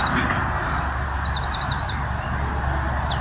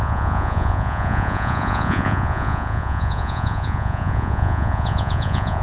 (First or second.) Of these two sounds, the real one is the first